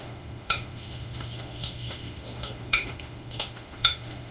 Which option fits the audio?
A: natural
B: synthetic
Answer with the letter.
B